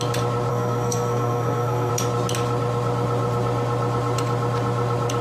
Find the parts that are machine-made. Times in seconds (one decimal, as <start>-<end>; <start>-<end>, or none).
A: 0.5-1.9